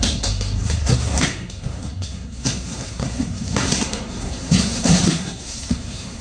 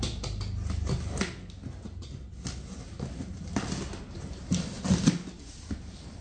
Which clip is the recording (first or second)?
second